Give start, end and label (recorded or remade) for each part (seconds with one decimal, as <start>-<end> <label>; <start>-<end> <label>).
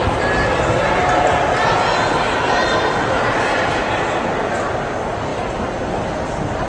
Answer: 0.0-1.9 recorded; 1.9-3.9 remade; 3.9-5.3 recorded; 5.3-6.0 remade; 6.0-6.7 recorded